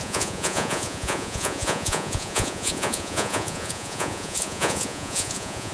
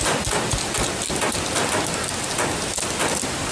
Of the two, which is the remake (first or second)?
first